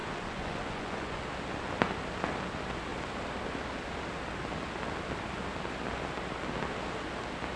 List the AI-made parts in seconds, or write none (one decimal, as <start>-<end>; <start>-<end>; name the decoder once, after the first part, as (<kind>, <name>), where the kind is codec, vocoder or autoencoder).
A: 0.0-1.2 (vocoder, Vocos)